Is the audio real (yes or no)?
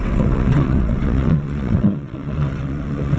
no